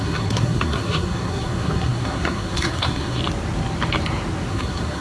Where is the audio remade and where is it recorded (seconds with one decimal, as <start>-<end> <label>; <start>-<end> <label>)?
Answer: 0.0-3.2 remade; 3.2-4.5 recorded; 4.5-5.0 remade